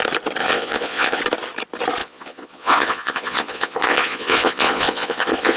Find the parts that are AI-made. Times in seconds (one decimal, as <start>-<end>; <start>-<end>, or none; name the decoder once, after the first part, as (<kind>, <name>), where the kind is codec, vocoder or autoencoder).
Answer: 0.4-1.2 (vocoder, Vocos); 2.0-5.6